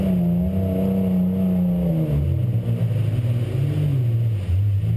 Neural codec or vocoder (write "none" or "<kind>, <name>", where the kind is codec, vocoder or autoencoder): none